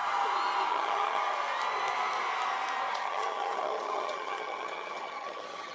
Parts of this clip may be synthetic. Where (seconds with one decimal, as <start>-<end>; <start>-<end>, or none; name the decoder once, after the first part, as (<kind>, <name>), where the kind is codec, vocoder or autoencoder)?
0.7-1.2 (vocoder, HiFi-GAN); 2.9-5.7